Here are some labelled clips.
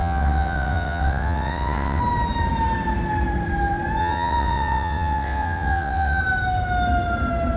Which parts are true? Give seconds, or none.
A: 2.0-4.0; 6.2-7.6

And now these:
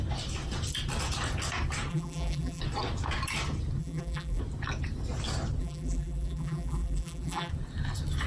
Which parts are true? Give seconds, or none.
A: 0.0-1.9; 2.6-3.8; 4.4-5.6; 7.5-8.3

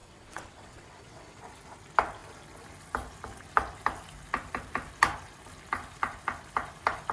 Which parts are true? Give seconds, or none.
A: 1.4-7.1

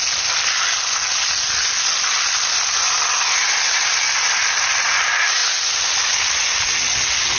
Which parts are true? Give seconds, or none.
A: 0.0-7.4

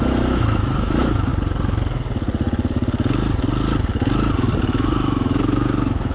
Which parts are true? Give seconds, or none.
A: 1.3-4.6

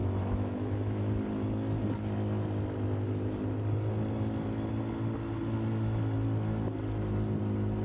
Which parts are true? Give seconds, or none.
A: 1.2-7.8

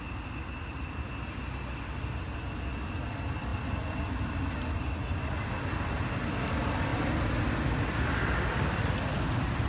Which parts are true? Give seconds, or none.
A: 0.0-9.7

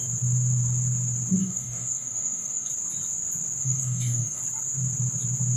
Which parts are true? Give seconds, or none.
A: 0.0-1.4; 2.7-3.6; 4.4-5.6